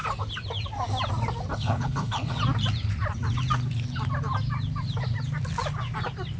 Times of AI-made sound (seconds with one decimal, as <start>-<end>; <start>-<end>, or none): 1.5-2.4